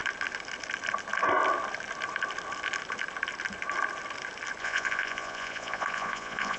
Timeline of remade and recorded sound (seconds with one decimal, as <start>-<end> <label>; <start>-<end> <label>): 0.0-4.6 recorded; 4.6-6.6 remade